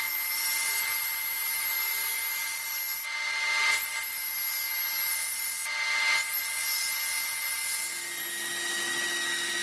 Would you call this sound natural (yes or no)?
yes